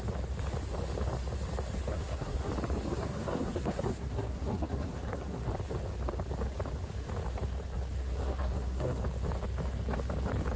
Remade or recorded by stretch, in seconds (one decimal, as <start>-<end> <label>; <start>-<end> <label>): 0.0-1.9 recorded; 1.9-2.5 remade; 2.5-2.9 recorded; 2.9-5.5 remade; 5.5-8.0 recorded; 8.0-9.0 remade; 9.0-10.6 recorded

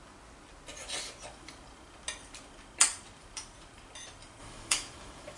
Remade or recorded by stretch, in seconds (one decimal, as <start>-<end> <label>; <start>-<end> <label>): 0.0-4.4 recorded; 4.4-5.4 remade

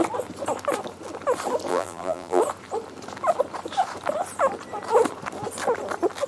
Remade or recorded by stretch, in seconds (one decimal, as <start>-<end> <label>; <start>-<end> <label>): 0.0-1.7 recorded; 1.7-2.4 remade; 2.4-6.3 recorded

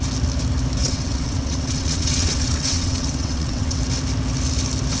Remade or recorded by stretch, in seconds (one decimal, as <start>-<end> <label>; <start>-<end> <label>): 0.0-0.8 recorded; 0.8-3.8 remade; 3.8-5.0 recorded

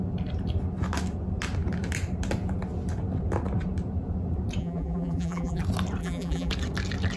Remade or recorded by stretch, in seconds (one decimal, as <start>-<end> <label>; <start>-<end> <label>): 0.0-4.6 recorded; 4.6-5.6 remade; 5.6-6.0 recorded; 6.0-6.5 remade; 6.5-7.2 recorded

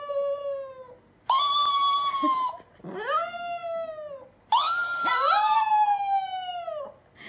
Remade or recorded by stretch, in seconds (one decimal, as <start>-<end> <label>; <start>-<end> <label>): 0.0-7.3 recorded

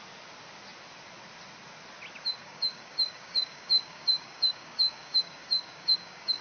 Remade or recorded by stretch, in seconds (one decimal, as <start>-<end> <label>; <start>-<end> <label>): 0.0-2.4 recorded; 2.4-6.4 remade